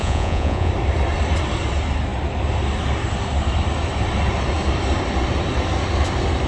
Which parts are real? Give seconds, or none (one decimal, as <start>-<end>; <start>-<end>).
0.7-6.5